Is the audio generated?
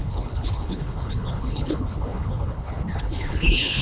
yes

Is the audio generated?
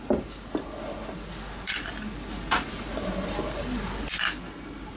no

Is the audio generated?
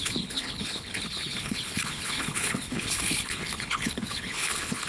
yes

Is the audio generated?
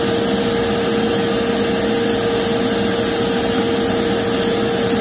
no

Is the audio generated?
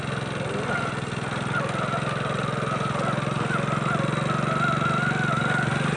no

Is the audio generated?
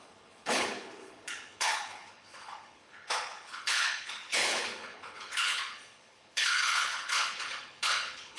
yes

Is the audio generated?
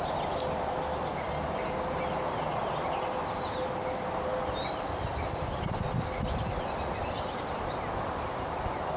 no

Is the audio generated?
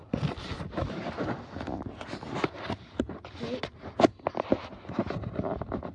no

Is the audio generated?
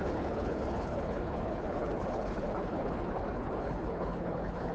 yes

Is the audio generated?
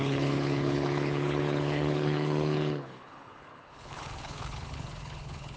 yes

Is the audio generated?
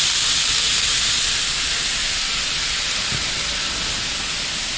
no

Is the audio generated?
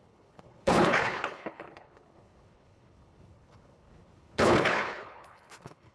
yes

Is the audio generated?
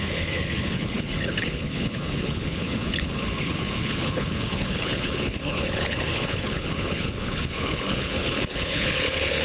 yes